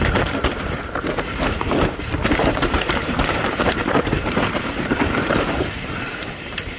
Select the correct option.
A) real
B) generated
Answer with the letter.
B